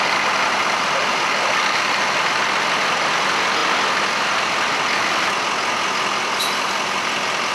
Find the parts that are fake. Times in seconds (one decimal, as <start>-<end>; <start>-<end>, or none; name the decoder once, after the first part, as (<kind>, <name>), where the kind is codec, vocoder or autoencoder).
none